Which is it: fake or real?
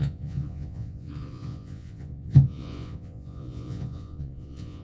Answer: fake